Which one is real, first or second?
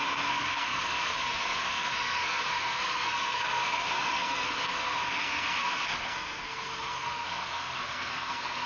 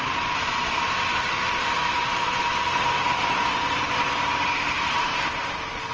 second